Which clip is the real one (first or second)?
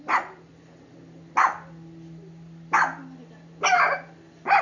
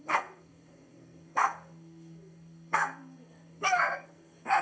first